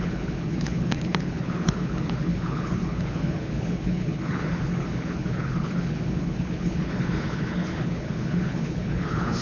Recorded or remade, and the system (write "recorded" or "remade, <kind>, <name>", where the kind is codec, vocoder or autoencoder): remade, codec, HILCodec